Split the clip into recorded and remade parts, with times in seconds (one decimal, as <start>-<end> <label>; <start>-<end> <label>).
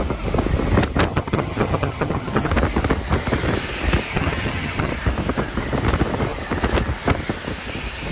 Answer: 0.0-1.1 recorded; 1.1-2.5 remade; 2.5-4.1 recorded; 4.1-4.9 remade; 4.9-8.1 recorded